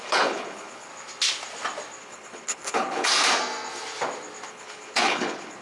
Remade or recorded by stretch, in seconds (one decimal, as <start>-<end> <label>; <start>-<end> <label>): 0.0-0.9 remade; 0.9-2.0 recorded; 2.0-3.1 remade; 3.1-4.5 recorded; 4.5-5.6 remade